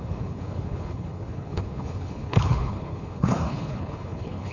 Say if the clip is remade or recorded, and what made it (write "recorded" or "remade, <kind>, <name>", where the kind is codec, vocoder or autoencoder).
remade, codec, HILCodec